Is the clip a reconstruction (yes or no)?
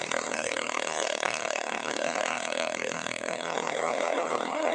yes